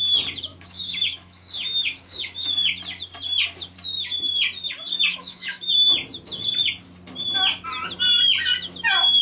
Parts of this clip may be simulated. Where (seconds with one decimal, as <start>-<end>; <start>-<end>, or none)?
0.5-2.5; 5.1-5.7